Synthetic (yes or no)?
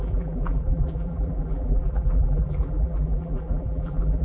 yes